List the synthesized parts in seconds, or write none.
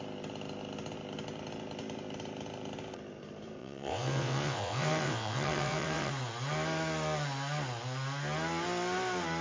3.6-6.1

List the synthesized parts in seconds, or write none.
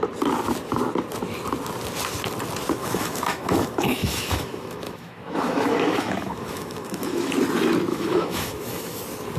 2.8-7.3; 7.9-9.0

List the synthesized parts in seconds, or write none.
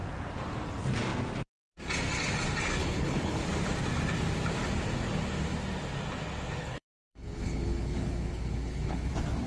2.8-3.4; 6.6-9.1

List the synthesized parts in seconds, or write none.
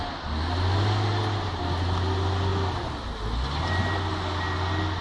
none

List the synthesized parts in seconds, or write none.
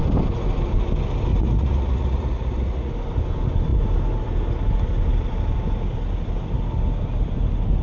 1.3-2.9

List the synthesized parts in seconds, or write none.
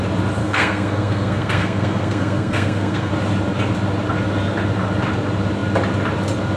0.4-3.1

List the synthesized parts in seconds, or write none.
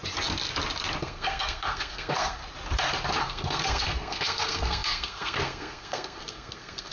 1.0-2.4; 3.2-6.9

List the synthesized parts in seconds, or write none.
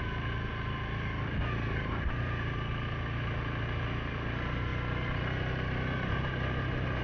none